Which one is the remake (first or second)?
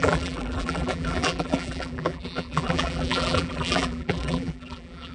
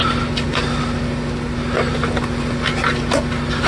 first